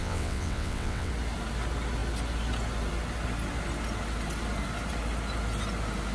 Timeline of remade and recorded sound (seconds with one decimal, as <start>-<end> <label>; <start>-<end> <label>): 0.0-1.1 remade; 1.1-6.1 recorded